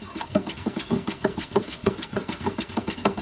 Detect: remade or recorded remade